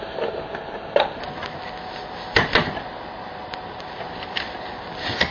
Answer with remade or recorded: recorded